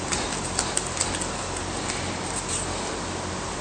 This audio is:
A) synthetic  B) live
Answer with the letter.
B